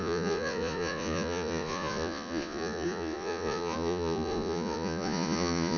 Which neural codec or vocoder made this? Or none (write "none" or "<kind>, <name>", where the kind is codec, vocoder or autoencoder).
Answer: vocoder, Vocos